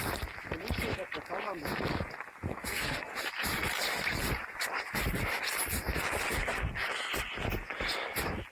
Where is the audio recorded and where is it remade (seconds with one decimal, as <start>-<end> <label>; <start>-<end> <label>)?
0.0-2.5 recorded; 2.5-3.1 remade; 3.1-8.5 recorded